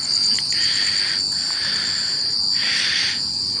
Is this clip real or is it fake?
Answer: real